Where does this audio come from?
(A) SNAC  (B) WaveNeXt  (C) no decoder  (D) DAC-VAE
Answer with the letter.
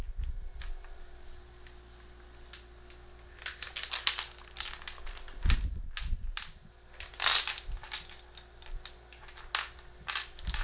C